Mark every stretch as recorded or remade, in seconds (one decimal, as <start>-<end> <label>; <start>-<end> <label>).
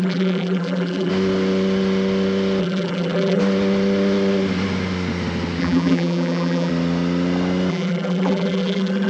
0.0-1.1 remade; 1.1-2.6 recorded; 2.6-3.4 remade; 3.4-5.6 recorded; 5.6-6.7 remade; 6.7-7.7 recorded; 7.7-9.1 remade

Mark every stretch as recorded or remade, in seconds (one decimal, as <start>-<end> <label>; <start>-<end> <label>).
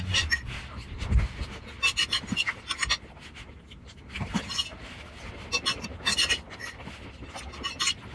0.0-8.1 recorded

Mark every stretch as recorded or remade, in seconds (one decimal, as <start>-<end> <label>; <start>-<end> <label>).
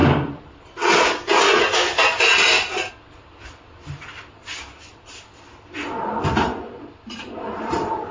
0.0-8.1 recorded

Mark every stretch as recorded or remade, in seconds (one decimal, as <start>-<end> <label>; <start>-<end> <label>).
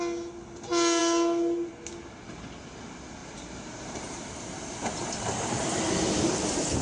0.0-3.2 recorded; 3.2-5.8 remade; 5.8-6.8 recorded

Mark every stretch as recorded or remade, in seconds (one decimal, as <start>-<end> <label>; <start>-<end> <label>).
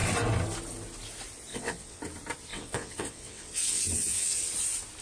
0.0-1.5 recorded; 1.5-2.0 remade; 2.0-2.5 recorded; 2.5-4.5 remade; 4.5-5.0 recorded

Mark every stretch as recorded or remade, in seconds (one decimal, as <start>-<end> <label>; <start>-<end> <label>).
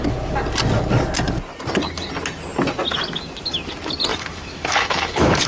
0.0-4.1 recorded; 4.1-5.5 remade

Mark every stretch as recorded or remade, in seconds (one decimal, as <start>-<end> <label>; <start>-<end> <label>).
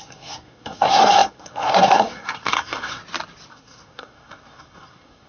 0.0-3.0 remade; 3.0-3.5 recorded; 3.5-5.3 remade